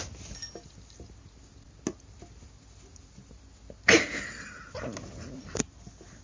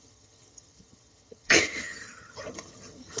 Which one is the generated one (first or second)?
second